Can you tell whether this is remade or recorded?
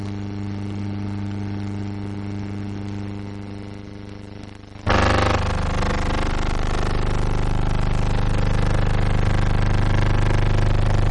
recorded